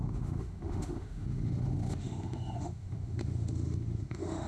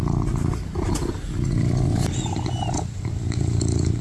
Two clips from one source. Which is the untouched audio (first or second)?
second